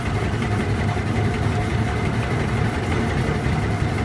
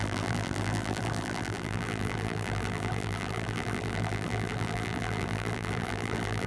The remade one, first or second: second